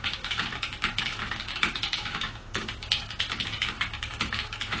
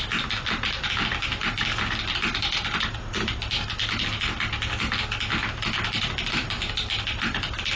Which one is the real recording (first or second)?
second